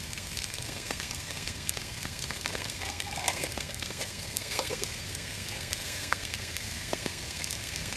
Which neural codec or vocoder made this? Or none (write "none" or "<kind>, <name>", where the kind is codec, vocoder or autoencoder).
codec, SNAC